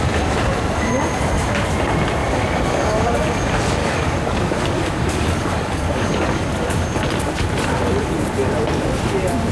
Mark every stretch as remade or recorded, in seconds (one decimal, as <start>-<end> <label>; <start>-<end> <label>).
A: 0.0-2.2 recorded; 2.2-3.1 remade; 3.1-3.8 recorded; 3.8-6.5 remade; 6.5-9.5 recorded